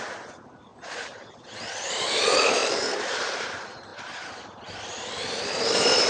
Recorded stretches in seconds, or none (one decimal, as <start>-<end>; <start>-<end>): 0.0-0.7; 1.4-2.6; 3.5-6.1